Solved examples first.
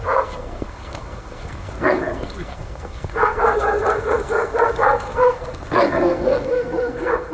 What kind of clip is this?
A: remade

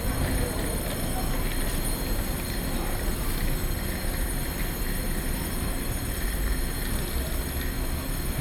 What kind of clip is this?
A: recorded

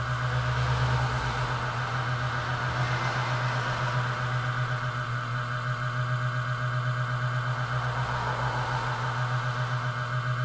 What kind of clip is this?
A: recorded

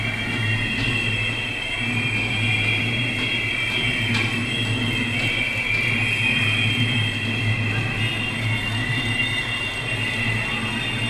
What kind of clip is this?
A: recorded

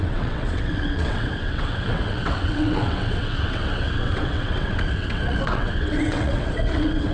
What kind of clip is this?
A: remade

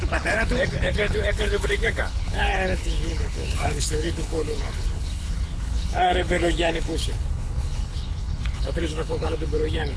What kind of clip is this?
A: remade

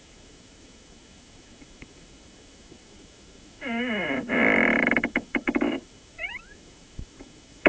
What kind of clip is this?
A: remade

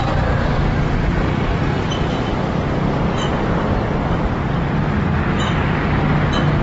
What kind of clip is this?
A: recorded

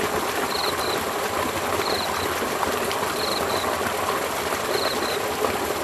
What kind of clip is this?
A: recorded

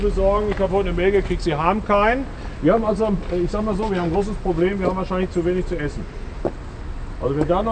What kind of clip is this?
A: recorded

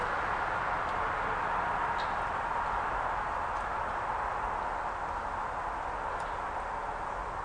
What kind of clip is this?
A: recorded